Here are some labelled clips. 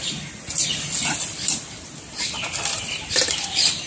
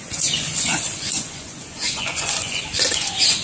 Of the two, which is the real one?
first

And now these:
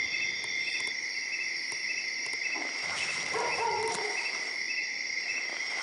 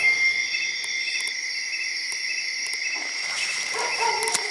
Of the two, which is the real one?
second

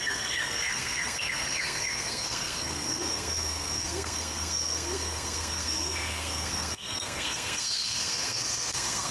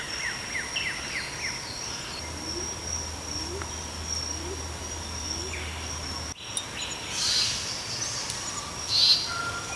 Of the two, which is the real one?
second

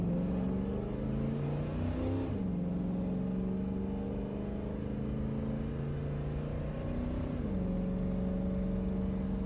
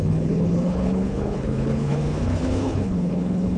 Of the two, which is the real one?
first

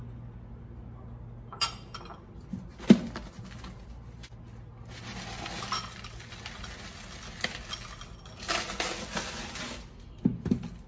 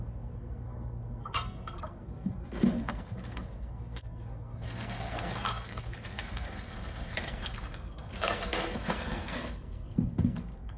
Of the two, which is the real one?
first